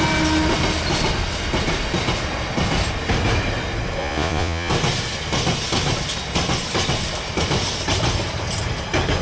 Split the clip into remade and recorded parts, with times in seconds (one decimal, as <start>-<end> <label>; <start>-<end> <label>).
0.0-4.0 recorded; 4.0-4.7 remade; 4.7-9.2 recorded